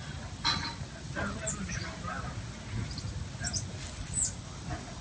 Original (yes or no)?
yes